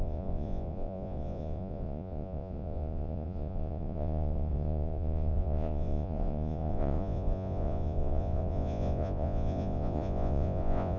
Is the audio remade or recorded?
remade